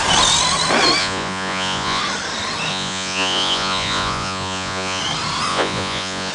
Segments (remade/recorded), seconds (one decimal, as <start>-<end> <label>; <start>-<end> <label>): 0.0-1.0 recorded; 1.0-2.0 remade; 2.0-2.7 recorded; 2.7-5.0 remade; 5.0-5.5 recorded; 5.5-6.3 remade